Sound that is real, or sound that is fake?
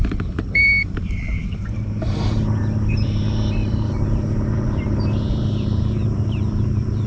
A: fake